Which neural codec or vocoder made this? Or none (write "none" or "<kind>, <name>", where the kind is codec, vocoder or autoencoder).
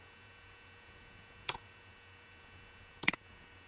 vocoder, Vocos